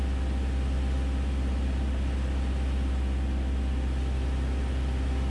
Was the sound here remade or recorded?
recorded